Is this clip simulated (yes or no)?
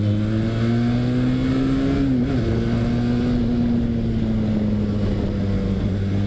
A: no